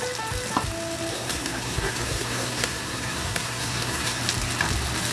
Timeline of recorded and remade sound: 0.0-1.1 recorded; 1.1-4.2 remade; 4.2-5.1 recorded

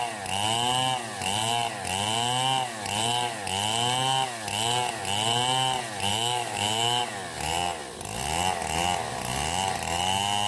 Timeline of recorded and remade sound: 0.0-6.1 recorded; 6.1-7.0 remade; 7.0-10.5 recorded

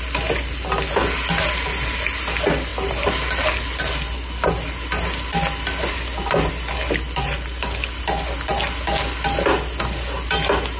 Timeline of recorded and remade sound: 0.0-10.8 recorded

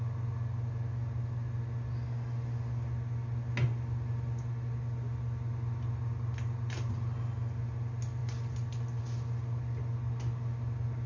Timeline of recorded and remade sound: 0.0-11.1 recorded

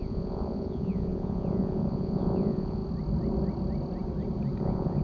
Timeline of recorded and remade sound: 0.0-2.8 remade; 2.8-4.6 recorded; 4.6-5.0 remade

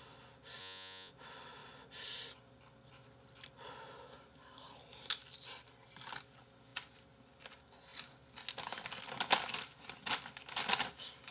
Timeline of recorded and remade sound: 0.0-0.6 recorded; 0.6-1.1 remade; 1.1-11.3 recorded